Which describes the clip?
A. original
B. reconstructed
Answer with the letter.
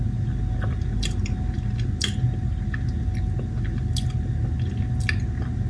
A